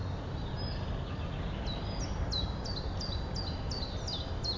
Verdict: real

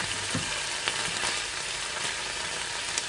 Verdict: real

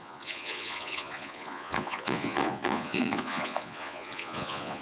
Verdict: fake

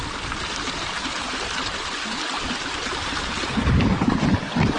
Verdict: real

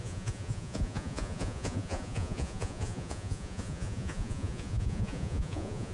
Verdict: fake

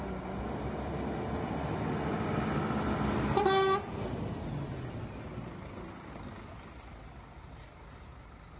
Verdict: real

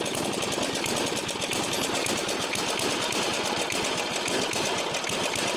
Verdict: real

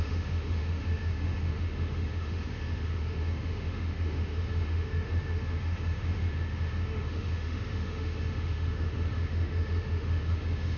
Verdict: fake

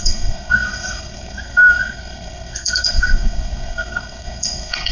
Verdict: fake